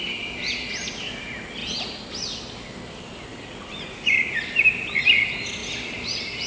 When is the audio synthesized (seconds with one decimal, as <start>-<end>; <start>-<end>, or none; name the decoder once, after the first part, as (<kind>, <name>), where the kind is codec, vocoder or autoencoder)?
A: 3.3-4.4 (vocoder, Vocos)